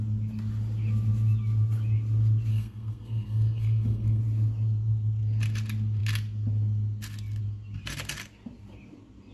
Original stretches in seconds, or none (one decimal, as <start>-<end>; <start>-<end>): 0.0-2.5; 4.2-9.3